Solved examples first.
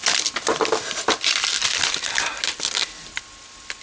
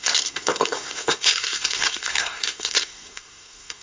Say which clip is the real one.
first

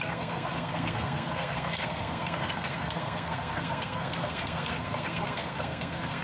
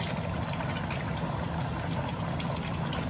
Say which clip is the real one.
second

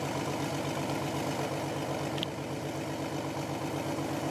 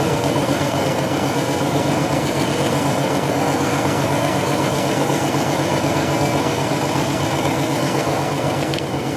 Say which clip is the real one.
first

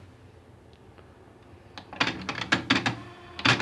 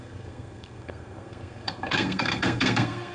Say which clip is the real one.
first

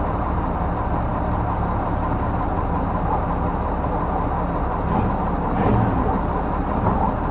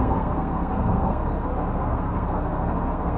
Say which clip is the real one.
first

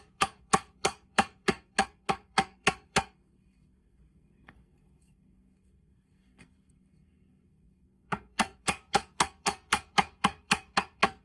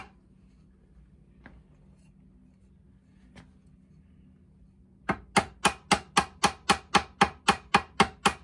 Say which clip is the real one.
second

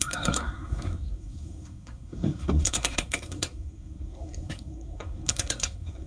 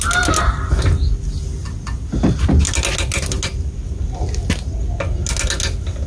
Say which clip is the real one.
second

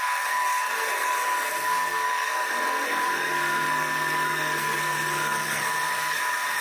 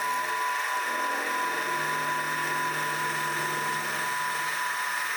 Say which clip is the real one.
second